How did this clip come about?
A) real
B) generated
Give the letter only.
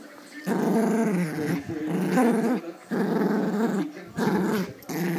A